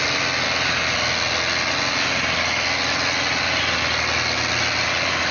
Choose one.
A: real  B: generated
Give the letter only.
A